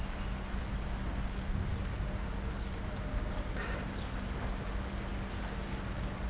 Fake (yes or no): no